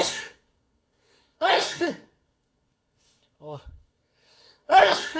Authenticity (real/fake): fake